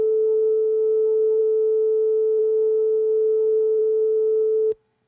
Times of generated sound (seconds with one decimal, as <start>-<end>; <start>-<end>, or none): 0.0-1.4; 2.4-5.1